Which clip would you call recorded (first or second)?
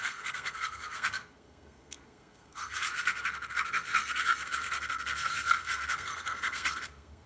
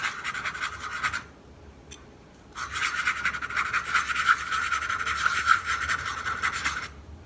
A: second